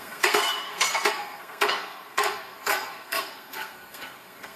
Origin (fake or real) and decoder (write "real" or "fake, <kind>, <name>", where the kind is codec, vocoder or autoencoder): fake, codec, SNAC